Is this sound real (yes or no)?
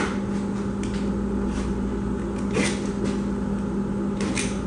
yes